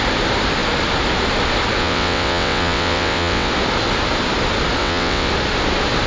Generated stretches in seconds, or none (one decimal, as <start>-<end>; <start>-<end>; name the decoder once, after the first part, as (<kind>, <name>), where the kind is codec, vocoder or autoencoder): 1.8-3.5 (vocoder, WaveNeXt); 4.8-5.3